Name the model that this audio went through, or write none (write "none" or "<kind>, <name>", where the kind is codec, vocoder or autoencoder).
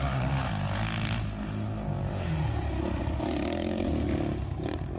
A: none